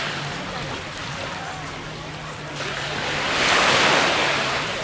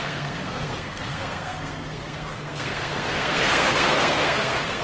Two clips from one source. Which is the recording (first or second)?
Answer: first